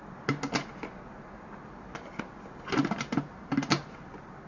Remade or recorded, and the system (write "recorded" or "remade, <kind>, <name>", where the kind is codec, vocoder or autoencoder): recorded